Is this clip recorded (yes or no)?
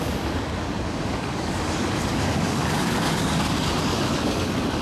no